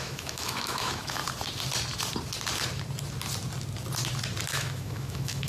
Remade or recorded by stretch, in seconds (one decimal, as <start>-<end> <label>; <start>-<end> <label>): 0.0-1.2 remade; 1.2-4.5 recorded; 4.5-5.5 remade